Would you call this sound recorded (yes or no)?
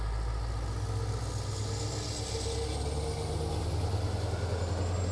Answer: yes